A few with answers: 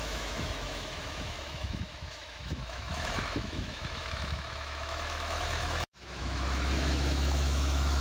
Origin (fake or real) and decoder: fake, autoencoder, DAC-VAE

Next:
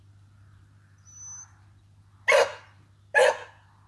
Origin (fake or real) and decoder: real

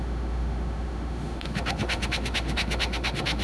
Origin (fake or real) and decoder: fake, autoencoder, DAC-VAE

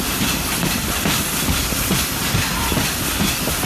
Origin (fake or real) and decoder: real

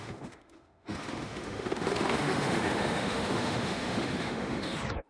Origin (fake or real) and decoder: fake, autoencoder, DAC-VAE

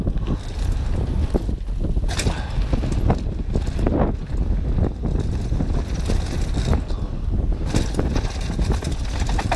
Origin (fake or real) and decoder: real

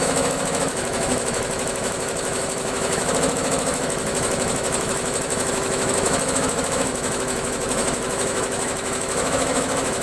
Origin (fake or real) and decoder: fake, autoencoder, DAC-VAE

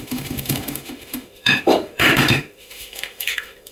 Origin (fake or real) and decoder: fake, autoencoder, DAC-VAE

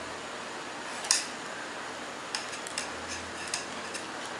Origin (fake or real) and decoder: real